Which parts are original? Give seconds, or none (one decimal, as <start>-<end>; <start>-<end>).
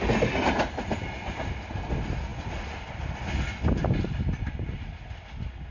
0.0-5.7